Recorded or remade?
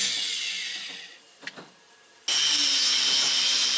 recorded